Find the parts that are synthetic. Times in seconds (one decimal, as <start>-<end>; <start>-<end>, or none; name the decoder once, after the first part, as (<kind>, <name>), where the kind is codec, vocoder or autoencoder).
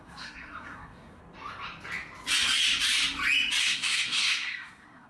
0.0-1.2 (codec, SNAC); 3.6-5.1